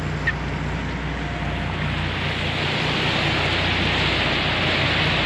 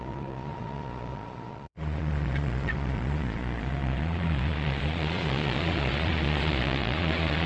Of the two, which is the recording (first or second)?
first